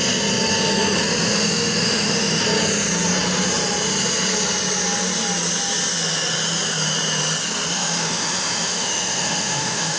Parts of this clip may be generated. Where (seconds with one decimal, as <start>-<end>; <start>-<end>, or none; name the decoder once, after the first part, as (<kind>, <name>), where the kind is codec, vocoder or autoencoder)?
1.3-2.4 (autoencoder, DAC-VAE); 7.7-10.0